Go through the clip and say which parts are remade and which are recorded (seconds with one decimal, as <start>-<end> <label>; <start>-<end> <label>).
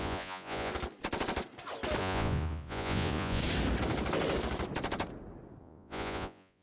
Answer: 0.0-0.7 remade; 0.7-2.0 recorded; 2.0-3.4 remade; 3.4-5.6 recorded; 5.6-6.6 remade